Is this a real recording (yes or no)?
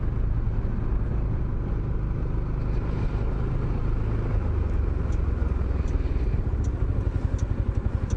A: yes